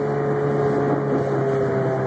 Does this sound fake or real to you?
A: real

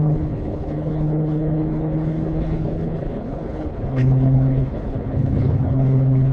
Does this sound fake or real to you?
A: fake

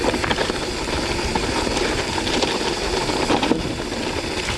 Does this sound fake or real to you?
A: real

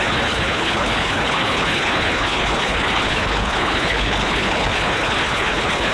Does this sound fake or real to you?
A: fake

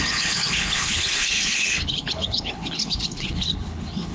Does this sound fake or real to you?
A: fake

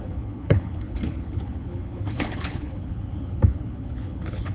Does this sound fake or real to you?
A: fake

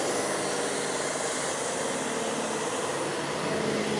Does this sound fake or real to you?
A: real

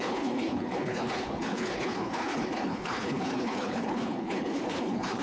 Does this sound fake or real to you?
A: fake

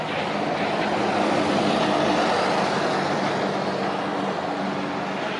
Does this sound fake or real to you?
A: real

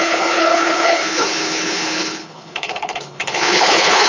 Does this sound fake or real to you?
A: fake